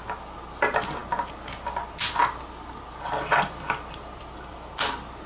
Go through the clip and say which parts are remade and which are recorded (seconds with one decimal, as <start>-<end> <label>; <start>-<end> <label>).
0.0-5.3 recorded